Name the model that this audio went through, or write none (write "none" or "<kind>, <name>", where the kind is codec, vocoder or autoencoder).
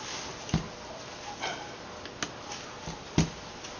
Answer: none